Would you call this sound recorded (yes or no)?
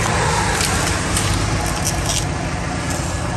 yes